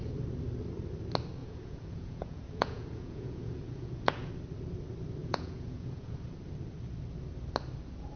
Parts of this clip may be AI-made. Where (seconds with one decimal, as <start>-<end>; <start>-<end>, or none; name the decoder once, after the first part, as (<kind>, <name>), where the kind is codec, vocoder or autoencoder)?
1.4-4.3 (vocoder, Vocos); 5.2-6.3